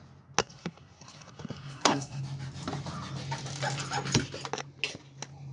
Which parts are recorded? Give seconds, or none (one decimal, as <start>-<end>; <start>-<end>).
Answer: 0.0-0.4; 2.2-5.5